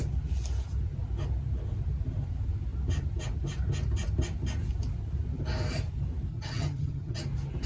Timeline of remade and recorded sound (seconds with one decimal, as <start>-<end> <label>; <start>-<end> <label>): 0.0-6.3 recorded; 6.3-7.2 remade; 7.2-7.7 recorded